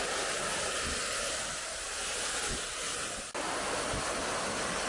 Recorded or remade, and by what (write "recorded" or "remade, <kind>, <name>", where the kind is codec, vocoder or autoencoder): recorded